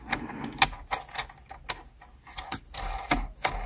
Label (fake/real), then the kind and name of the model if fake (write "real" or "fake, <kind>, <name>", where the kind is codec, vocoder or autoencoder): real